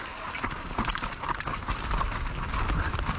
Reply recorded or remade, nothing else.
recorded